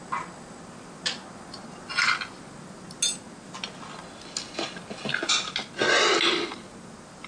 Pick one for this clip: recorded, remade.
recorded